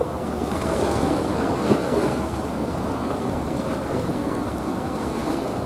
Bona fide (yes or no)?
no